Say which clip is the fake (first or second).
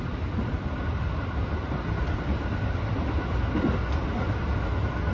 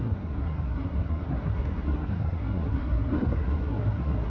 second